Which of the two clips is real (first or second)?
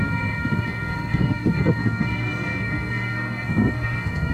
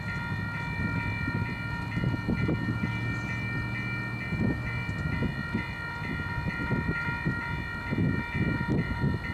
second